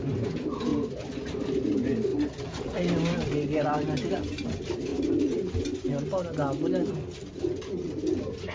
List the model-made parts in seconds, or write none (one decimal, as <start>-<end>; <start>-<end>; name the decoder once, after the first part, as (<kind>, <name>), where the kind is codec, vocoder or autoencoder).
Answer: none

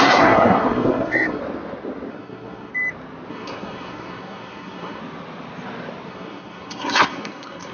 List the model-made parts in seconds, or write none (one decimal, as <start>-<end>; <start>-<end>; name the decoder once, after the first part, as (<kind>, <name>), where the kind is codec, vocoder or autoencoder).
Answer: 0.0-1.4 (codec, SNAC); 2.1-2.7; 3.3-5.0; 6.1-7.7

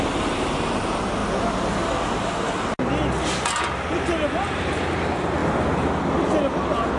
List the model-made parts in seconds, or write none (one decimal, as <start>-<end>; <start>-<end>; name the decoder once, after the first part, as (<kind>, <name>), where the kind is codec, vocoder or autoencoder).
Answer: none